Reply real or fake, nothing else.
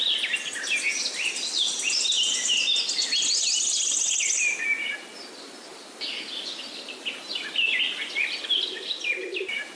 real